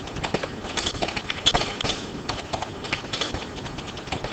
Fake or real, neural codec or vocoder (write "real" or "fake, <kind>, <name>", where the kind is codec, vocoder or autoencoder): real